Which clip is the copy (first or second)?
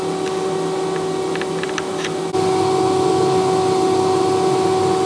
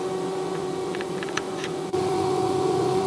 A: second